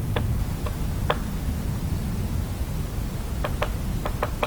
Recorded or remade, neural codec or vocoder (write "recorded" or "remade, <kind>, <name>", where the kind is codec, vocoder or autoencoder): recorded